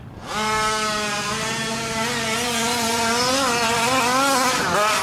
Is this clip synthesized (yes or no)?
no